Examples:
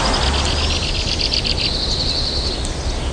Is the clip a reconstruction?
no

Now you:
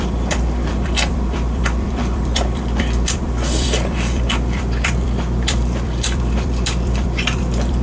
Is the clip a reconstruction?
yes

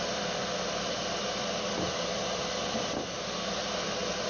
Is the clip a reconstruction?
no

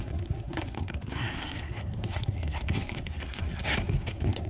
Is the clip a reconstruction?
yes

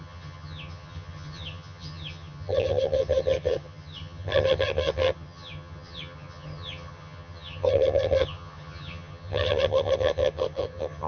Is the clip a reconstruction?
yes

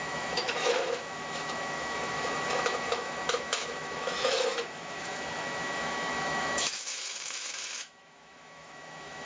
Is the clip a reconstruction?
yes